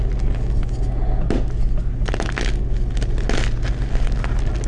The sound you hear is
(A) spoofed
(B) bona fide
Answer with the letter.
B